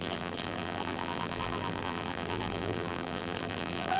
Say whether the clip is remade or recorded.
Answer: remade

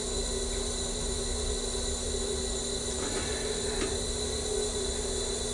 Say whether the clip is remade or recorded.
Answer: recorded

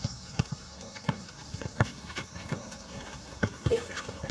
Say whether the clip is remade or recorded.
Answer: remade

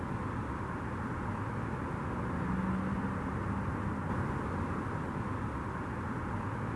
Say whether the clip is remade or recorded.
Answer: recorded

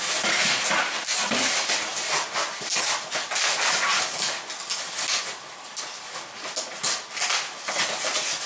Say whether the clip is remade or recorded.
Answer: recorded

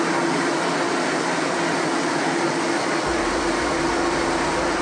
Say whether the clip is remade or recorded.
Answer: recorded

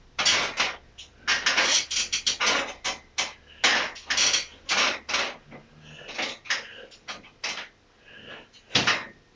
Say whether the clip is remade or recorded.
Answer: recorded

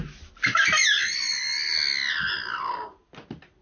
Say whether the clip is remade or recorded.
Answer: recorded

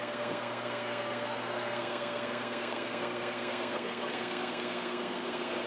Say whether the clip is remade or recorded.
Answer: remade